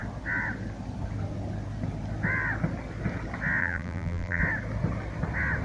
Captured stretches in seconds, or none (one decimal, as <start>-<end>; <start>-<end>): 0.0-3.6; 4.4-5.6